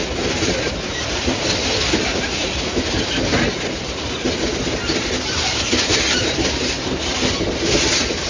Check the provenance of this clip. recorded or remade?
recorded